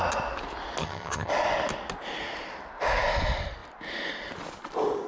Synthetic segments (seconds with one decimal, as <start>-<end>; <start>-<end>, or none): 0.8-1.3